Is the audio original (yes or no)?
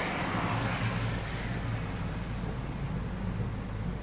yes